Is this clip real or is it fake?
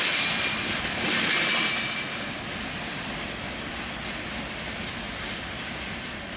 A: real